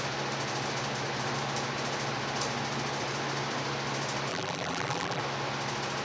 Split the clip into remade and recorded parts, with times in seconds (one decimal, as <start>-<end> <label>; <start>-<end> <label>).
0.0-4.3 recorded; 4.3-5.2 remade; 5.2-6.0 recorded